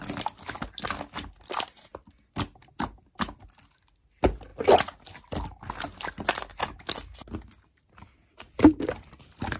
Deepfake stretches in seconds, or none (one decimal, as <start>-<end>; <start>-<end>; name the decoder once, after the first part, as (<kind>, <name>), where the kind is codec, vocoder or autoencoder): none